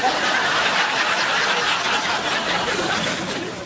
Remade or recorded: recorded